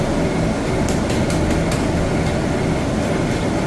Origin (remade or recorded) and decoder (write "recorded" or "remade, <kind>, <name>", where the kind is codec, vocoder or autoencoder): recorded